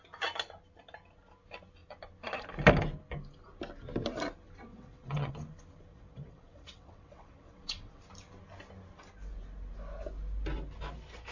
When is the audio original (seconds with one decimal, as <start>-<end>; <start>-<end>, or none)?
0.0-4.7; 5.3-5.9; 8.0-11.3